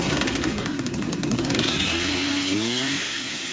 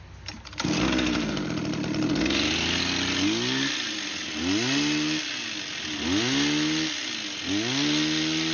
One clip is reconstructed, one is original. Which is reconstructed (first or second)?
first